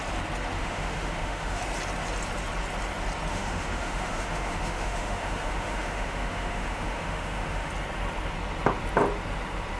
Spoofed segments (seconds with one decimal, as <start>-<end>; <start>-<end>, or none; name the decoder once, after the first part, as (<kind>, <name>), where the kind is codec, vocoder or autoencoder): 0.6-1.6 (autoencoder, DAC-VAE); 3.3-7.7